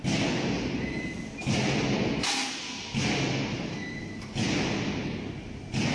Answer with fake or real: real